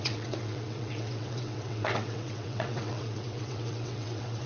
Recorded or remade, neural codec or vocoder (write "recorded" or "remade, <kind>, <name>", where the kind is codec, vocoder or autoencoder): remade, vocoder, WaveNeXt